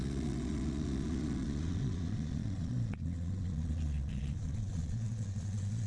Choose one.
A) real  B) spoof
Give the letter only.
B